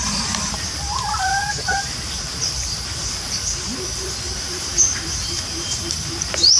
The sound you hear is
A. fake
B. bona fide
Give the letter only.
A